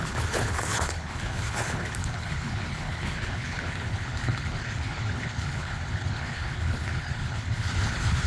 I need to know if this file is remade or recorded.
remade